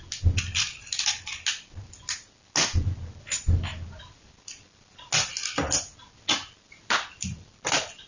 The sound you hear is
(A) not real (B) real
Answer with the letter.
B